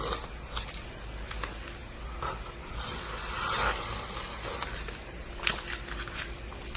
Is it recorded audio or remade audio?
recorded